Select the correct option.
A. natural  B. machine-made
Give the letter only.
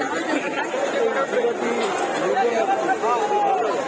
A